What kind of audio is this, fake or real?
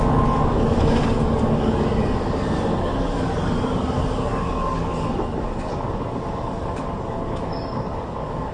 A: fake